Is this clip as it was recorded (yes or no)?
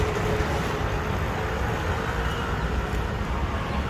yes